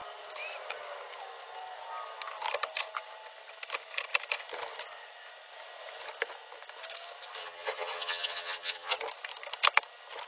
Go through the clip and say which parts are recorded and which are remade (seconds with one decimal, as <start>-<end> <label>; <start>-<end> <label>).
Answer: 0.0-7.4 recorded; 7.4-9.0 remade; 9.0-10.3 recorded